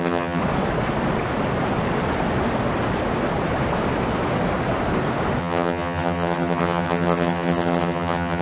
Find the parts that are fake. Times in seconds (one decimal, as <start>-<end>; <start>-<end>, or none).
0.0-0.4; 5.4-8.4